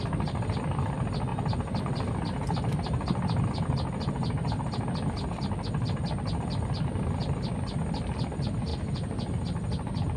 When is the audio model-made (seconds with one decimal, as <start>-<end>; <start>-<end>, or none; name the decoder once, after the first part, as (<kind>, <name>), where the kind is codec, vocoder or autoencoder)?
none